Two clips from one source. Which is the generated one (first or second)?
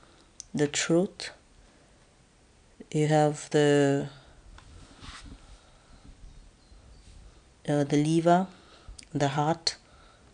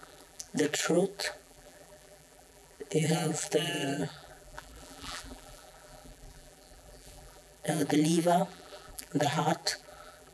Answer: second